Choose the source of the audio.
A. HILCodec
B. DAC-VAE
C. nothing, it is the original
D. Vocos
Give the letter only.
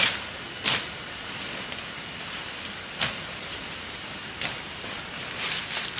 C